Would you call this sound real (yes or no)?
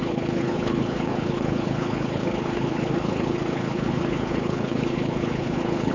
no